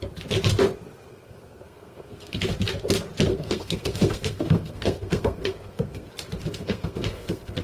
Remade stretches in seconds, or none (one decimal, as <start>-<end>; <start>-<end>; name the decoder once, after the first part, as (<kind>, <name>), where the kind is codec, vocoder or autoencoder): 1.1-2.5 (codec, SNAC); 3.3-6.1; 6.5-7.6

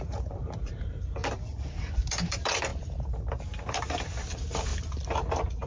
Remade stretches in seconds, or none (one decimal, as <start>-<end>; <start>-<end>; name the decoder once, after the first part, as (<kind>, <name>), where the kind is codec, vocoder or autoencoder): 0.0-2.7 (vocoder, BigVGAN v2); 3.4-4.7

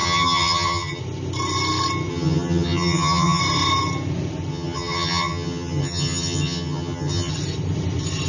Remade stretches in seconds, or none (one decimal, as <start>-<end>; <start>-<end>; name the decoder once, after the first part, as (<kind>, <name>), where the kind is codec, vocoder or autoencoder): 0.0-1.0 (vocoder, HiFi-GAN); 2.1-3.4; 4.5-7.3

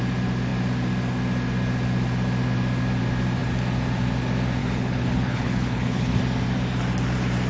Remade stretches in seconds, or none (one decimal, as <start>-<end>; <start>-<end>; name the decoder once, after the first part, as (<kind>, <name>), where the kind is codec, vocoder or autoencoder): 4.6-6.2 (codec, HILCodec)

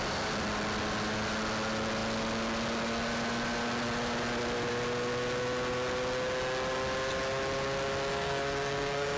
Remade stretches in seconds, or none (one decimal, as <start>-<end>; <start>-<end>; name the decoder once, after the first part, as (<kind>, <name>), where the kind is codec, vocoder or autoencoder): 8.1-9.2 (codec, SNAC)

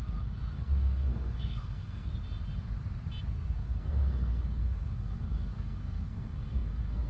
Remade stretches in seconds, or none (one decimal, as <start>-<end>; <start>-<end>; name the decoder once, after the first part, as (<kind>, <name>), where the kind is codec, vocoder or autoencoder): 0.0-2.1 (codec, SNAC); 3.3-7.1

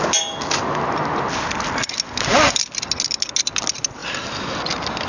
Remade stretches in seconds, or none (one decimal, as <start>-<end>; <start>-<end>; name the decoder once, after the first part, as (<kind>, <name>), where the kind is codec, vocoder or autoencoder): none

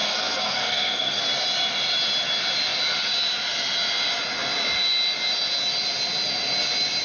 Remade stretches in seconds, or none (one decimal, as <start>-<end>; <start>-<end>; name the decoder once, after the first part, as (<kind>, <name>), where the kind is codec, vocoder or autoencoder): 0.0-1.2 (codec, SNAC)